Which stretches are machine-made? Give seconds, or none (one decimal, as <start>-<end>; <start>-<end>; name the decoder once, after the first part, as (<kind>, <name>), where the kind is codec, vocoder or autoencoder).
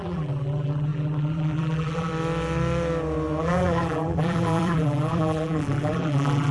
0.0-2.1 (vocoder, BigVGAN v2); 3.4-6.5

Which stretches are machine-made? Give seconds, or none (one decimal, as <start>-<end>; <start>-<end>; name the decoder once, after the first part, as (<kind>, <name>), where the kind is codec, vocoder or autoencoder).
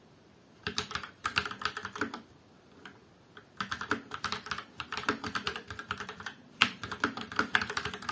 0.0-1.3 (vocoder, BigVGAN v2); 4.5-8.1